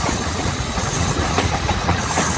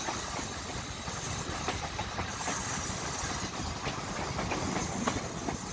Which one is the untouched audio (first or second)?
second